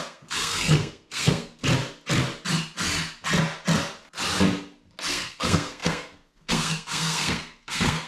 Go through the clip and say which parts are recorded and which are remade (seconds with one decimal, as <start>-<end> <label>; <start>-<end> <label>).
0.0-1.6 remade; 1.6-5.1 recorded; 5.1-8.1 remade